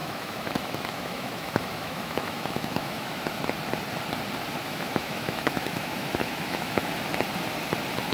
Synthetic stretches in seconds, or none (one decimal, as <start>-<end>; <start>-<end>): 0.0-3.2; 4.6-6.9

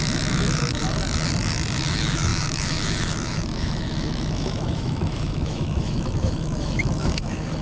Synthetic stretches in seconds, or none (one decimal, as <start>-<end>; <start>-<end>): 0.0-0.8; 1.9-7.6